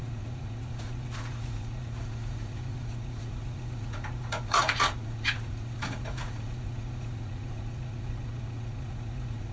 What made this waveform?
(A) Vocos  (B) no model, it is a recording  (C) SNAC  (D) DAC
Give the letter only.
A